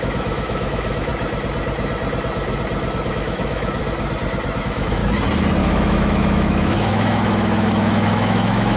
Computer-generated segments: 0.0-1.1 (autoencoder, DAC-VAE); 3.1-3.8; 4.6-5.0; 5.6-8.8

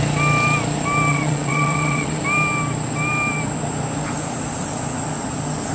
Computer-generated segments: 1.1-2.2 (vocoder, WaveNeXt)

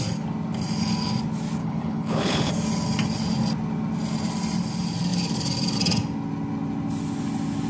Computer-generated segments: 1.6-2.5 (codec, HILCodec)

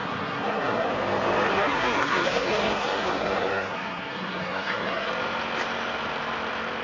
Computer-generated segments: 0.0-0.9 (codec, SNAC); 1.5-5.1

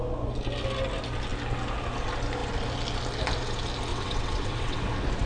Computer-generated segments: 3.9-4.8 (vocoder, WaveNeXt)

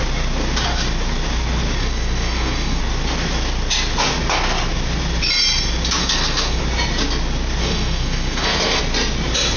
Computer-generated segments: 1.8-2.8 (codec, SNAC); 6.0-6.6; 7.6-8.8

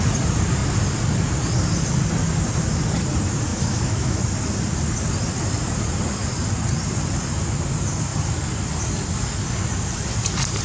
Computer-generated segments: 3.5-4.2 (autoencoder, DAC-VAE)